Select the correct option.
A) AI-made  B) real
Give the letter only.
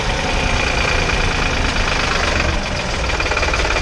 B